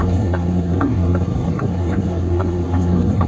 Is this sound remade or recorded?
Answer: remade